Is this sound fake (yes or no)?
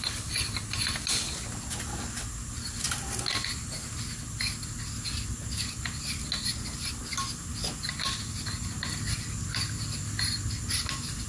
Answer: no